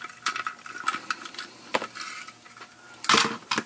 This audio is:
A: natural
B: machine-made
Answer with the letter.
A